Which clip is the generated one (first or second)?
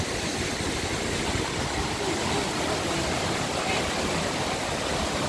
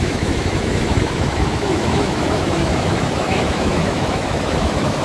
second